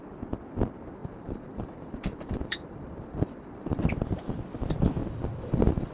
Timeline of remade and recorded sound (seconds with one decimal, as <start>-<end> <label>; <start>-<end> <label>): 0.0-1.0 recorded; 1.0-3.8 remade; 3.8-5.0 recorded; 5.0-5.9 remade